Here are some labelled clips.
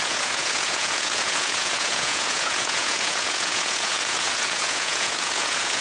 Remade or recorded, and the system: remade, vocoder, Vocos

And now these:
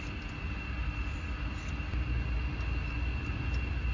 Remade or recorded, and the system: recorded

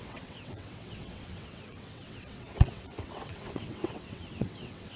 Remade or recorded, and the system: remade, vocoder, WaveNeXt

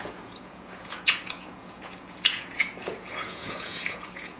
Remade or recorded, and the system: remade, vocoder, Vocos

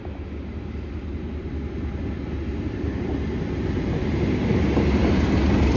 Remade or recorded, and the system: recorded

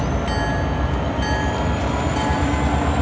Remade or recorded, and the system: recorded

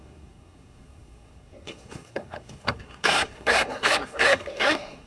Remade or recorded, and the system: remade, codec, SNAC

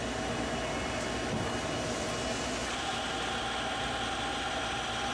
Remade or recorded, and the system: recorded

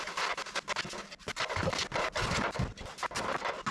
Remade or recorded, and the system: recorded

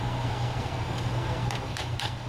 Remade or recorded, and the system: remade, codec, SNAC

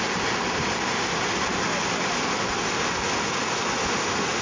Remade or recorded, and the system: recorded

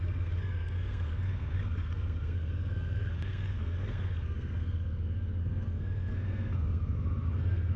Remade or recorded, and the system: remade, codec, SNAC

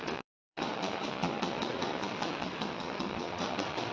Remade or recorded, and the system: remade, vocoder, Vocos